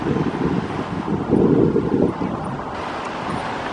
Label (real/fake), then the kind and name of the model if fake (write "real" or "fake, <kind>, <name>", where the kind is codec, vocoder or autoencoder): real